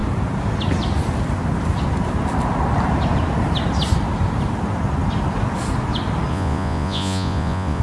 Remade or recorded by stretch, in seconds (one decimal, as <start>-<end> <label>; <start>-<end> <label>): 0.0-6.3 recorded; 6.3-7.8 remade